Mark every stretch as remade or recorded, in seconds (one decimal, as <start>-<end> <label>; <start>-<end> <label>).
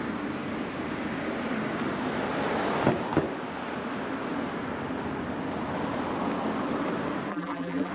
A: 0.0-7.3 recorded; 7.3-7.9 remade